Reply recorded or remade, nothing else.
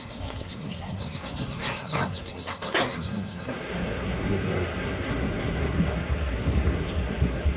remade